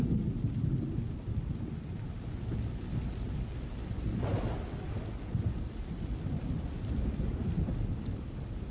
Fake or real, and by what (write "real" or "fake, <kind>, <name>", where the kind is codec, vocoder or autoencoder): real